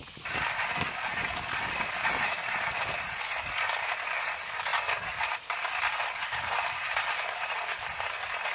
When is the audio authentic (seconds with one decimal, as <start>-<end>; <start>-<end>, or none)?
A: 0.0-0.7; 2.2-8.5